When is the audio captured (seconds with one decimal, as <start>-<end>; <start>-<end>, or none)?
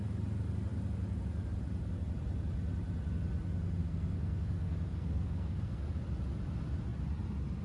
0.0-3.8; 5.9-7.6